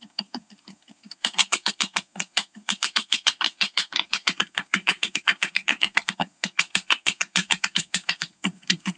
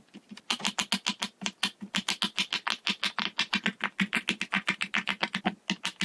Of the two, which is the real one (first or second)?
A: second